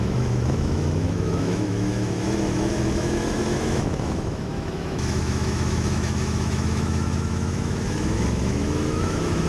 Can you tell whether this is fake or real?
fake